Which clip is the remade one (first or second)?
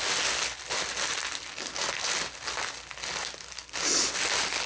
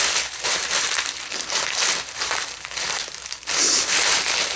second